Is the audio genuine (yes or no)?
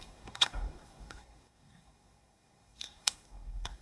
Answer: no